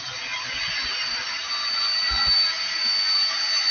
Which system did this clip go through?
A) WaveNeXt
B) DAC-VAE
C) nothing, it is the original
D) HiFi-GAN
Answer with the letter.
C